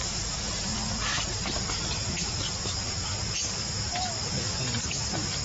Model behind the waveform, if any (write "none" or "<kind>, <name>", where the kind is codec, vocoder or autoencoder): none